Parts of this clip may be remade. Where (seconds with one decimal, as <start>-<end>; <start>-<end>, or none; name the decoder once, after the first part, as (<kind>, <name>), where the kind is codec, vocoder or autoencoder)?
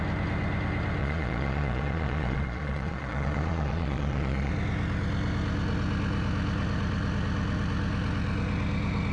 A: 1.0-4.5 (vocoder, Vocos)